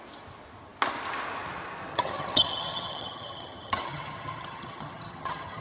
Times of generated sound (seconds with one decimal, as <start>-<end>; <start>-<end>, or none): 1.9-5.6